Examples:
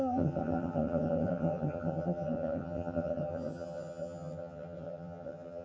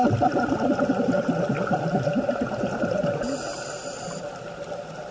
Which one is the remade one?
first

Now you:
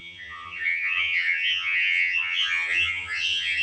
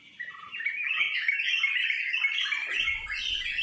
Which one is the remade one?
first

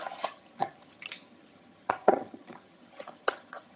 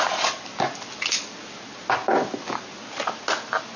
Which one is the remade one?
first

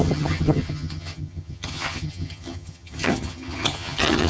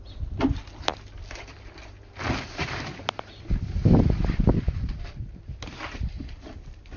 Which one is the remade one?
first